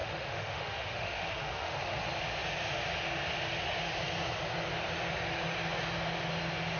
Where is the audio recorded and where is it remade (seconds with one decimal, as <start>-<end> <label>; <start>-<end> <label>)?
0.0-1.8 remade; 1.8-6.8 recorded